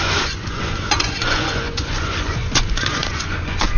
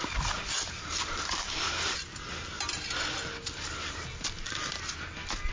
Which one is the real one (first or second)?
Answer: second